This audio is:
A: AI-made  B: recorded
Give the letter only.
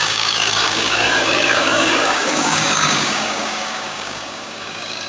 A